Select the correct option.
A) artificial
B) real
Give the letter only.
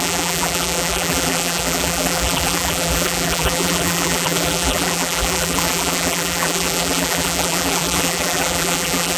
A